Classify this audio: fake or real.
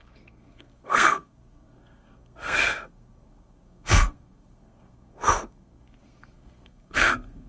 fake